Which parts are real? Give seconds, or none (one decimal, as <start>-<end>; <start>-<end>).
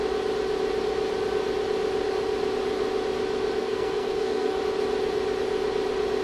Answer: 0.0-3.6; 4.6-6.2